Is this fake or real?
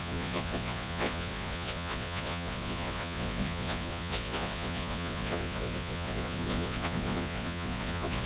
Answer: fake